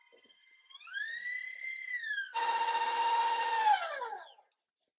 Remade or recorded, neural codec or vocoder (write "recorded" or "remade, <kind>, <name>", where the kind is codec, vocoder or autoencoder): recorded